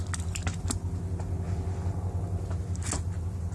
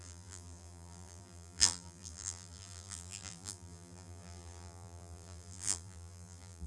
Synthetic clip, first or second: second